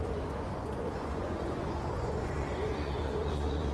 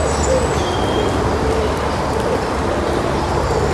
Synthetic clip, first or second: first